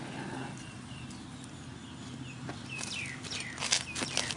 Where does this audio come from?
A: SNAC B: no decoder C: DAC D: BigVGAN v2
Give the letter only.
B